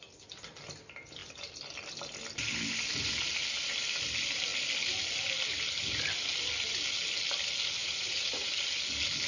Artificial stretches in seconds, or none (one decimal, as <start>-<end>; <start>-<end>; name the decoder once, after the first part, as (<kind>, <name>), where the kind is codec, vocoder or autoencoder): 7.8-8.5 (vocoder, Vocos)